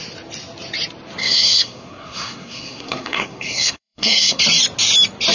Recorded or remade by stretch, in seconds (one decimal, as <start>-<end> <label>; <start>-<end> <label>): 0.0-1.2 recorded; 1.2-4.4 remade; 4.4-5.3 recorded